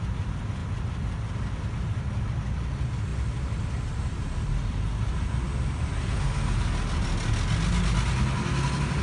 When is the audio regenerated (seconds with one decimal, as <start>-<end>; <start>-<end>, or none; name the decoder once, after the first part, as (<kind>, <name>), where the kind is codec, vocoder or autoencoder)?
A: none

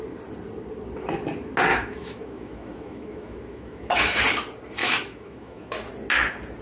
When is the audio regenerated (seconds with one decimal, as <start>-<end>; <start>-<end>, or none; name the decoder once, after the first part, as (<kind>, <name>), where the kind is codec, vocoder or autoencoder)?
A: 1.7-4.2 (autoencoder, DAC-VAE); 4.8-5.9

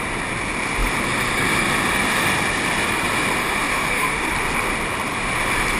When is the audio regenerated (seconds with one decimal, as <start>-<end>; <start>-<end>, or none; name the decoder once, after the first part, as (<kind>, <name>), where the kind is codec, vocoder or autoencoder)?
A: 3.4-4.3 (autoencoder, DAC-VAE)

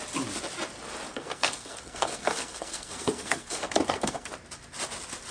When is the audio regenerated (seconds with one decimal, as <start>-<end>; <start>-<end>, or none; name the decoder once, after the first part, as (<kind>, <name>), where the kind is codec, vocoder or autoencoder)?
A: 1.1-4.3 (codec, SNAC)

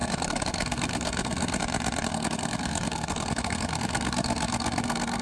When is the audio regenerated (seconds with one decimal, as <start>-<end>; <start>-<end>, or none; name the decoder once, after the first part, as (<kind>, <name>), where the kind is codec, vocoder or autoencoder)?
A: 0.0-1.6 (codec, SNAC); 2.1-5.2